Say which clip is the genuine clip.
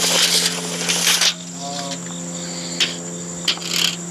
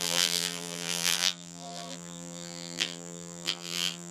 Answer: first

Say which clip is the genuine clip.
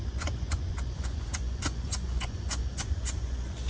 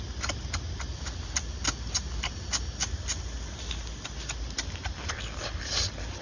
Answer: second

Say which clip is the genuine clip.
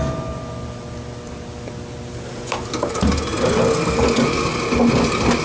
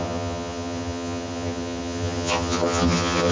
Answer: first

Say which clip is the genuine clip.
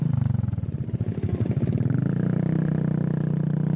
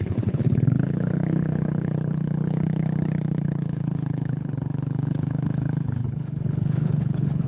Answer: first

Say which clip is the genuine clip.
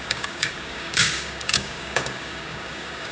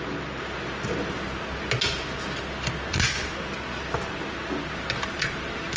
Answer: second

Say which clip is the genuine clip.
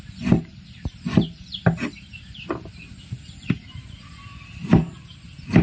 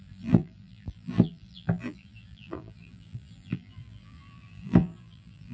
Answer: first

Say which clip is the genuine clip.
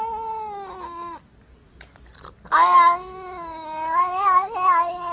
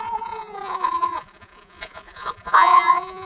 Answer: first